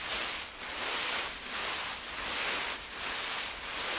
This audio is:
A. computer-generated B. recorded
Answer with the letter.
B